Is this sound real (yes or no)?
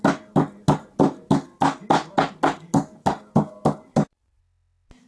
yes